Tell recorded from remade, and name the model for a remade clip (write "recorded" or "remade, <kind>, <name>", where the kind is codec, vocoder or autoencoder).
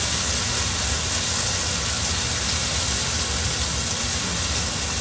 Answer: recorded